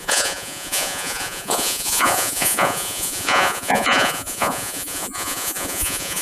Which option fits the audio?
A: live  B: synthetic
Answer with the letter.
B